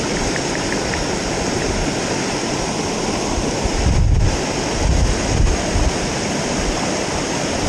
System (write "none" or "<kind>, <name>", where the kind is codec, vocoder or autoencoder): none